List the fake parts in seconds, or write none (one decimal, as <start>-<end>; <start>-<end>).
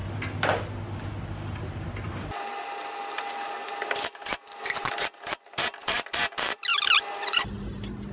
none